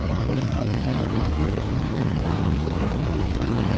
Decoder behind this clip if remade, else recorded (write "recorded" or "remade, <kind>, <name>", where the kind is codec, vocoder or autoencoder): remade, codec, SNAC